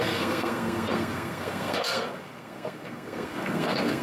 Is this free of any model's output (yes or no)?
no